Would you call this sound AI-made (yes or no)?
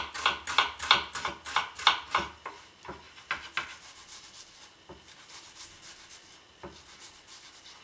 no